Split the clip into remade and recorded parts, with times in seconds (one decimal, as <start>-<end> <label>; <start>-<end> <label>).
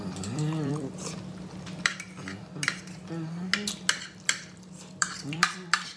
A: 0.0-3.5 remade; 3.5-4.0 recorded; 4.0-6.0 remade